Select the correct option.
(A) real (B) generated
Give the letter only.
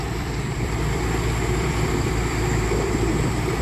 B